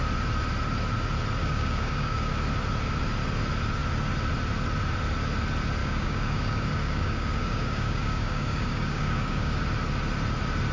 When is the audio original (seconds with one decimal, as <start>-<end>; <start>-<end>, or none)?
0.0-1.4; 2.3-5.8; 9.6-10.7